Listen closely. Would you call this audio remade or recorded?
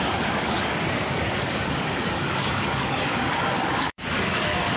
remade